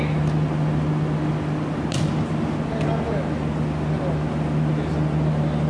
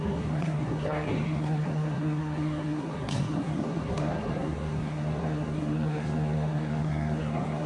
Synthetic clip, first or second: second